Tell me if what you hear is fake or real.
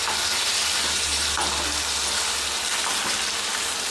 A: real